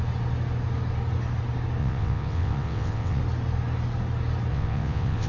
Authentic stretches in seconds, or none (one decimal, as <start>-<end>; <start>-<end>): 0.0-1.8; 3.2-4.5